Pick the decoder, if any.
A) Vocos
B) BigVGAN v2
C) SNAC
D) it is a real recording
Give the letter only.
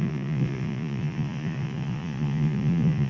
A